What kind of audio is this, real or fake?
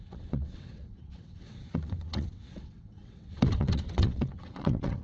fake